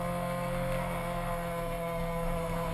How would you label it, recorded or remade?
remade